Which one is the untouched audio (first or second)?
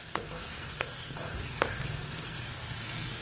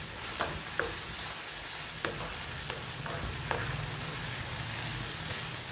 second